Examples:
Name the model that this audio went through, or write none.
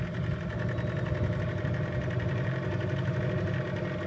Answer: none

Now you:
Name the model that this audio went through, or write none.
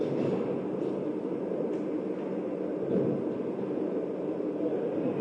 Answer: none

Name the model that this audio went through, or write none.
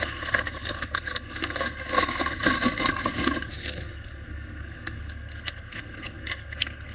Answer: codec, SNAC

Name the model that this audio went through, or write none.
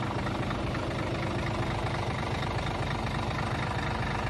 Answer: none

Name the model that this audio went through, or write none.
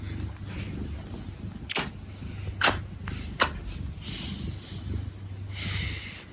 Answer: none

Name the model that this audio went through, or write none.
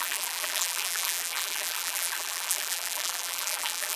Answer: vocoder, BigVGAN v2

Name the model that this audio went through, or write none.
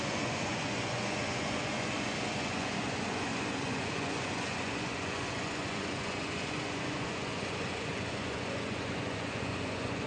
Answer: vocoder, Vocos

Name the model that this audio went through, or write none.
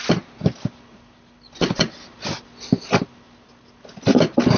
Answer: none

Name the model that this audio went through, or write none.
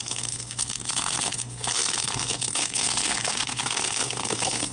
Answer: codec, SNAC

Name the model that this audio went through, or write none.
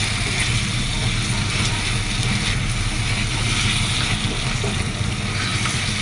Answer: none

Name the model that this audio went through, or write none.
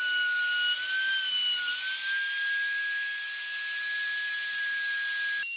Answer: none